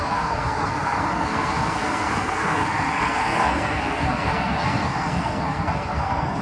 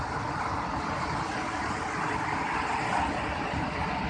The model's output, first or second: first